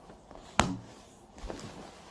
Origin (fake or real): real